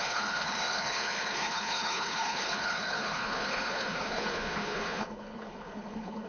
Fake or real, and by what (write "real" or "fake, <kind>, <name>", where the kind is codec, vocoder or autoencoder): fake, codec, HILCodec